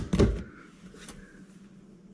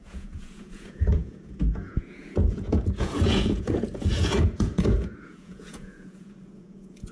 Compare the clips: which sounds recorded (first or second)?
first